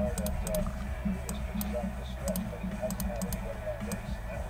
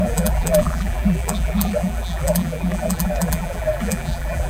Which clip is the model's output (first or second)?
second